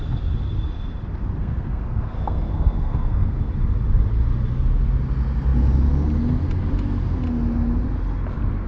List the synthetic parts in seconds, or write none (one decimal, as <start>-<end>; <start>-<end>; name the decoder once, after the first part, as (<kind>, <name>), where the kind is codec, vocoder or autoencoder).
1.4-3.5 (codec, SNAC)